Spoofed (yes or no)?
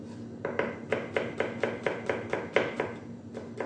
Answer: no